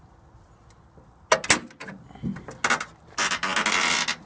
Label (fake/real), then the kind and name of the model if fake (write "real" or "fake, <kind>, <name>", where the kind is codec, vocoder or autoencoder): real